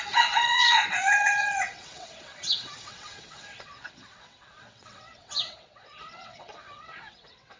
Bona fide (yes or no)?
no